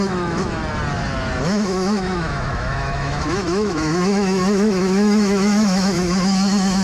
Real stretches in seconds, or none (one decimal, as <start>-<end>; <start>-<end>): 0.6-1.4